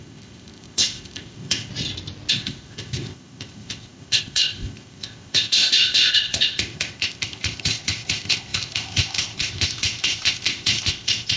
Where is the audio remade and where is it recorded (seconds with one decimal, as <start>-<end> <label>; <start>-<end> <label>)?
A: 0.0-1.7 remade; 1.7-2.3 recorded; 2.3-11.4 remade